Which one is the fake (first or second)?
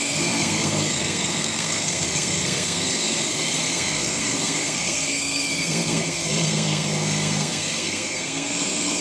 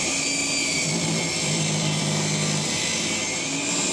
first